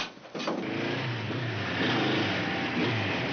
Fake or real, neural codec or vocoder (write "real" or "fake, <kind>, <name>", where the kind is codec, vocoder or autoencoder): real